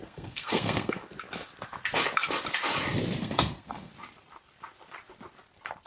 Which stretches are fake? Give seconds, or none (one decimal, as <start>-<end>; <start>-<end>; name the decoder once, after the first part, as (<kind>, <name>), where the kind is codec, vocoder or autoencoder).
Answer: 0.0-1.0 (codec, SNAC); 3.2-3.9